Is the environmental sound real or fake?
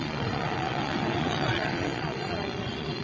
fake